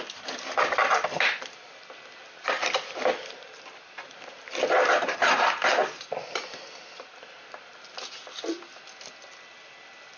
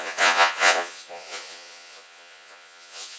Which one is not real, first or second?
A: second